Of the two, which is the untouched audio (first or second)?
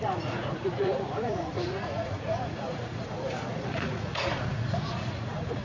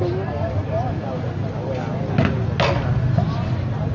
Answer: second